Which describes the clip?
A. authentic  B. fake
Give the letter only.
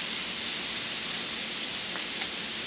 A